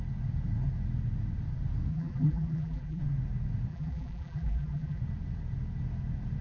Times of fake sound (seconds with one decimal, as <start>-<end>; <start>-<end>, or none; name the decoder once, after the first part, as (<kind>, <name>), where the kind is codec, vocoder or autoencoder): 1.9-3.0 (vocoder, BigVGAN v2); 3.7-5.0